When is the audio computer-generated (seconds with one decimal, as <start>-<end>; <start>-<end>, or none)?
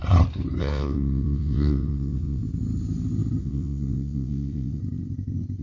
0.6-2.4; 3.4-4.8